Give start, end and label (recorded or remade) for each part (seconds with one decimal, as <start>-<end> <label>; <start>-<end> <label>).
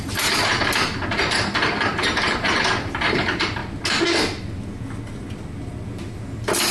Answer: 0.0-0.6 remade; 0.6-1.2 recorded; 1.2-3.6 remade; 3.6-6.7 recorded